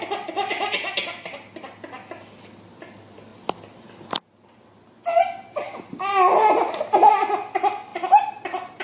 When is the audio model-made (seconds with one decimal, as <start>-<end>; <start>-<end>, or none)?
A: none